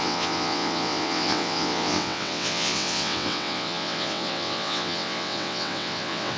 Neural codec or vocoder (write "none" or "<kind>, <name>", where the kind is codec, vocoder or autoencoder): vocoder, WaveNeXt